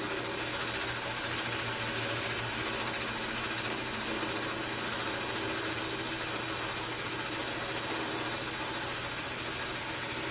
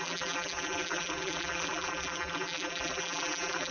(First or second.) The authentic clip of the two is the first